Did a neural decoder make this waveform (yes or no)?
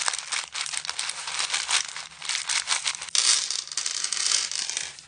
no